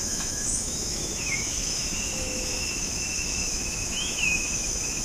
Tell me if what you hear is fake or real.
fake